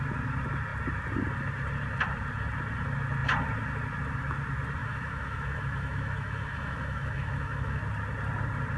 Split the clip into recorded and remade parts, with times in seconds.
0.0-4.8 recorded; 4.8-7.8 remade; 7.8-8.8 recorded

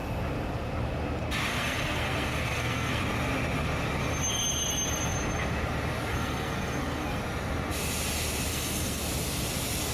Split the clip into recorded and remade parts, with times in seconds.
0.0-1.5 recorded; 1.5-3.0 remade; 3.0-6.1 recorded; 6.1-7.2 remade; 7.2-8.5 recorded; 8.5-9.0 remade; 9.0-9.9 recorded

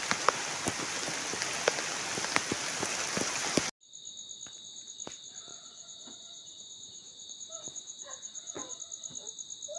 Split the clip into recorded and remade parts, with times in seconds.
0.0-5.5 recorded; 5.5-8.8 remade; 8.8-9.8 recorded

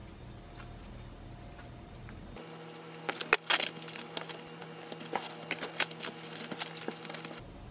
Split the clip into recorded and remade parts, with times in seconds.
0.0-7.7 recorded